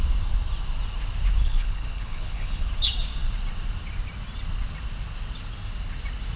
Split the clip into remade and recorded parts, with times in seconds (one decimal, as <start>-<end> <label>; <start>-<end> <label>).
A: 0.0-1.4 recorded; 1.4-2.7 remade; 2.7-6.4 recorded